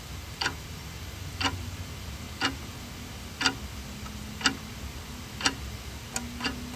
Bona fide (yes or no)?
yes